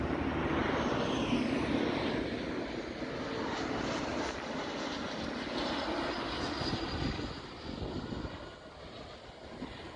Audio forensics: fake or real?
real